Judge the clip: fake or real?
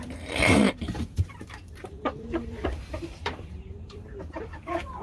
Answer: fake